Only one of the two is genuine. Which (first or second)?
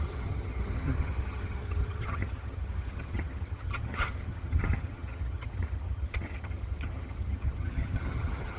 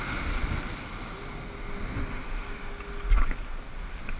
second